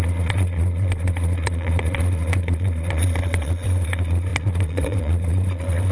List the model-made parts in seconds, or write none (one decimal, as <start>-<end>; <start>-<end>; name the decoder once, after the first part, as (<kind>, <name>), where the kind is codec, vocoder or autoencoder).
0.0-5.9 (vocoder, Vocos)